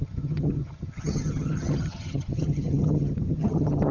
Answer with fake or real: fake